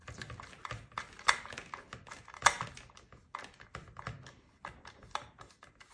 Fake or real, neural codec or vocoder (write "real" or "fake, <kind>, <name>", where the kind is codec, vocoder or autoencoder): real